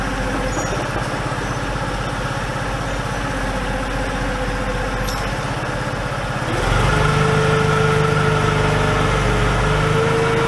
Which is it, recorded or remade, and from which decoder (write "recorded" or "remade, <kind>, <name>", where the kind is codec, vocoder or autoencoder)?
recorded